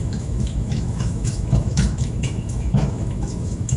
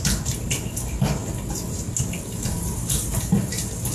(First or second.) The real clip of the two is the second